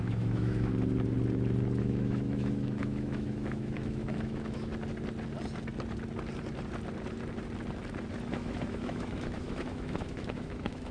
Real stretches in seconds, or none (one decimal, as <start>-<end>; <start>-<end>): 0.7-1.8; 4.7-8.3